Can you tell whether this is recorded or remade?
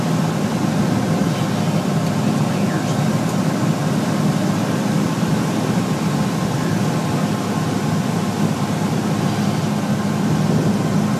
recorded